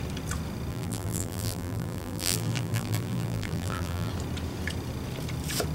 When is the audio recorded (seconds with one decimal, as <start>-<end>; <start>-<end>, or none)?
0.0-0.7; 4.1-5.7